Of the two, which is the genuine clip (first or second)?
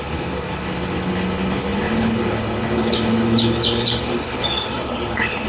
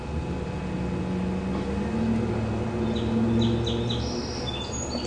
second